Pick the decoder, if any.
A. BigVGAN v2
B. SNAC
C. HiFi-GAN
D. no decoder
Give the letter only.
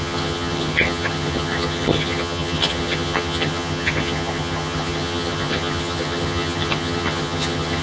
C